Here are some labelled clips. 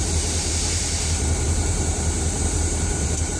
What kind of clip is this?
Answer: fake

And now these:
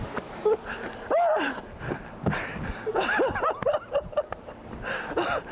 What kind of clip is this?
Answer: fake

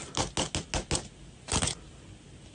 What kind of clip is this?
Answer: real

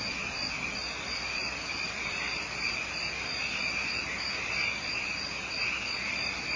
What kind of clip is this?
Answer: real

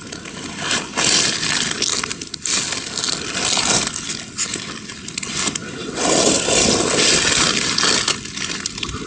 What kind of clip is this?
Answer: real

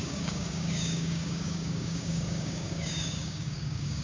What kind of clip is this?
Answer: fake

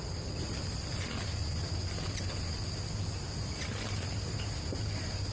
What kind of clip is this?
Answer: real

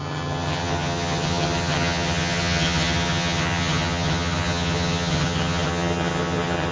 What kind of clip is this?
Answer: fake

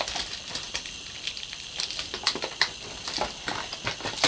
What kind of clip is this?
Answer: real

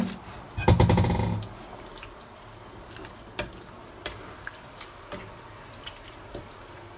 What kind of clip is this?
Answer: real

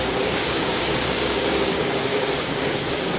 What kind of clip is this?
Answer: fake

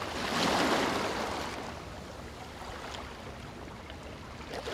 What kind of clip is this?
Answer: real